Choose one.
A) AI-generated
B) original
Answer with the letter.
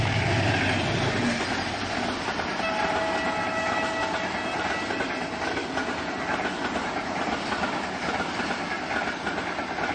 B